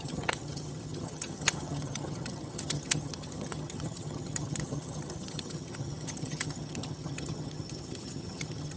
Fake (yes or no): yes